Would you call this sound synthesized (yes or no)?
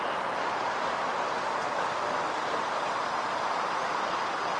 no